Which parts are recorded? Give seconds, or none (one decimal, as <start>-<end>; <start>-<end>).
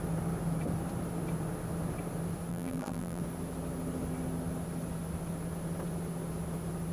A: 0.0-2.5; 3.2-6.9